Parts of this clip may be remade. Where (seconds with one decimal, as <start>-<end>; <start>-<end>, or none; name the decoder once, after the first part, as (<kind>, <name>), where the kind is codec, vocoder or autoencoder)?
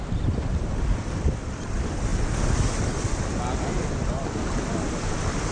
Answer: 0.0-2.1 (vocoder, BigVGAN v2)